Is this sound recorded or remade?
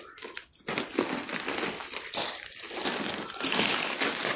recorded